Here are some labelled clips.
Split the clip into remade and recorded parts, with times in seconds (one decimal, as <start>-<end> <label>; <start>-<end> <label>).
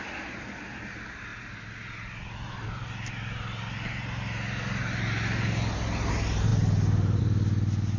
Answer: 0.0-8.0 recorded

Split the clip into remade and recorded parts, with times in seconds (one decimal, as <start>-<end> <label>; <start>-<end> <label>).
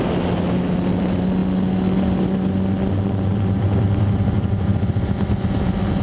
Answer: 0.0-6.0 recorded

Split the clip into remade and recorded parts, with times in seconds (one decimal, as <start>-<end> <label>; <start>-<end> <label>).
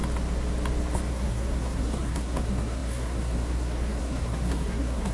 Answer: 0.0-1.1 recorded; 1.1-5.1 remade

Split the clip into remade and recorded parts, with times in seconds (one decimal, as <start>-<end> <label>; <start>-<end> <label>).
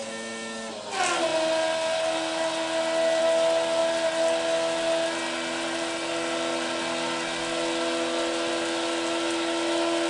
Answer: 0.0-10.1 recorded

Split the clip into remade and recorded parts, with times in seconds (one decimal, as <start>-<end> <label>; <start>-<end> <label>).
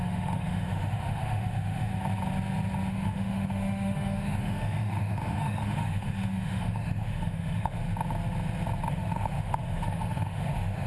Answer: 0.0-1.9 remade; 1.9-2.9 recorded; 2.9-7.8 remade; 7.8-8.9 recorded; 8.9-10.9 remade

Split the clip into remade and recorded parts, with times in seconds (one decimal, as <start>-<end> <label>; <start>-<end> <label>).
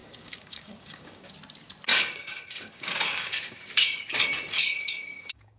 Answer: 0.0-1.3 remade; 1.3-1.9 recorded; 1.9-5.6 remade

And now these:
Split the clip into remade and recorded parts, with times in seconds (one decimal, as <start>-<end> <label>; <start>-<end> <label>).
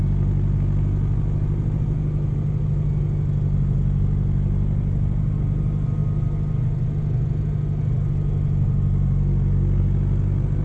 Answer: 0.0-10.6 recorded